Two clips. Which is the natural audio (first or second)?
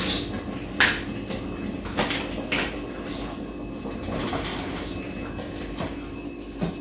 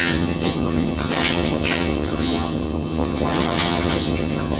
first